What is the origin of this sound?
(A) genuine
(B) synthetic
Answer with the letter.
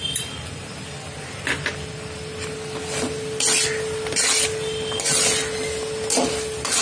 A